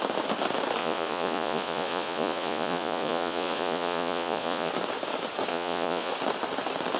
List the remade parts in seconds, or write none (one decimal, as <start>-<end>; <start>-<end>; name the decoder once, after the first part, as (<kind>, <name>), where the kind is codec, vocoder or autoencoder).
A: 0.8-4.7 (vocoder, Vocos); 5.5-6.1